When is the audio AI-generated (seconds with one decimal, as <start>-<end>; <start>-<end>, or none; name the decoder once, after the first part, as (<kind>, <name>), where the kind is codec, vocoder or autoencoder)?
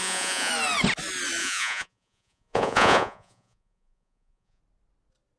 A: 0.0-0.5 (vocoder, Vocos); 1.4-4.6